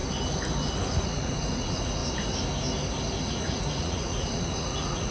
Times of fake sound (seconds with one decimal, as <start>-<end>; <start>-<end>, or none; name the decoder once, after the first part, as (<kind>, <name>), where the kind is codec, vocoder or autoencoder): 1.0-2.0 (vocoder, Vocos); 3.2-5.1